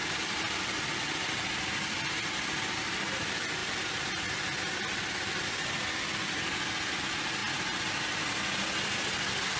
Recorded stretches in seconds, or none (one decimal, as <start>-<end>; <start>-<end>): 7.4-9.2